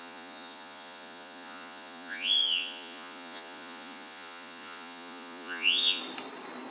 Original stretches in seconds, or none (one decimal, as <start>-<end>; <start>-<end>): 6.0-6.7